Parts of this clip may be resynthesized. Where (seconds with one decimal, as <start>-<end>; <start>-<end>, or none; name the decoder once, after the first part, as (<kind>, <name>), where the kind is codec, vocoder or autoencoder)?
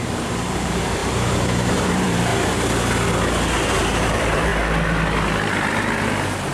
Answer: 0.0-2.3 (vocoder, BigVGAN v2); 3.7-4.5; 5.5-6.5